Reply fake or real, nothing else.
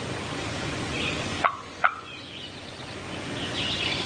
fake